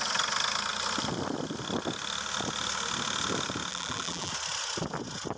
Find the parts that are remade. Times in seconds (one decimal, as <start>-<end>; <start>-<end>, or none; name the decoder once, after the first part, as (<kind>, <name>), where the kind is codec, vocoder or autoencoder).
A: 3.7-4.3 (vocoder, BigVGAN v2)